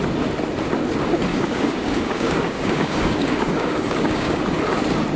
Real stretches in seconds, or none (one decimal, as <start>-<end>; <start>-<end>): 0.0-1.3; 4.4-5.2